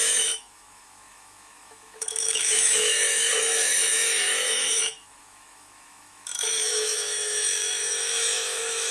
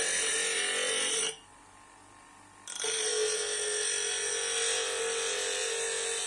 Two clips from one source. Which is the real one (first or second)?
second